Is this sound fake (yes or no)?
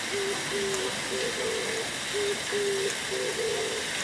no